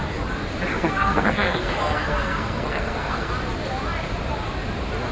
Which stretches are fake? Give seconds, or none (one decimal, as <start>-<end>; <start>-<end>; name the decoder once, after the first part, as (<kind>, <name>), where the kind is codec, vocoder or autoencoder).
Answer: 0.7-3.3 (codec, SNAC)